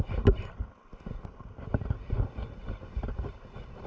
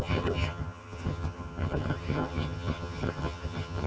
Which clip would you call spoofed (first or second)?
second